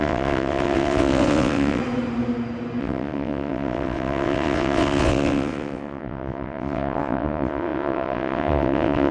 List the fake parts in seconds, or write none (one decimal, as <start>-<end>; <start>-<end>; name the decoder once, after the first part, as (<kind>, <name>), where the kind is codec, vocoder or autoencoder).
0.0-1.8 (vocoder, WaveNeXt); 2.8-9.1